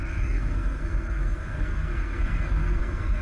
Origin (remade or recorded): remade